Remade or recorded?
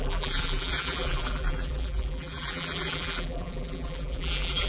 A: remade